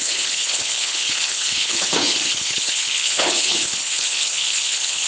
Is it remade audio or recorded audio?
remade